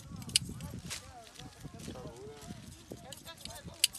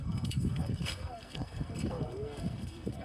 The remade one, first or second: second